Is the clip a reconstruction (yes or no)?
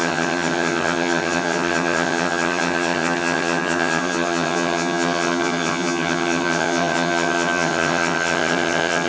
yes